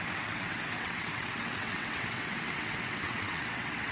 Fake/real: fake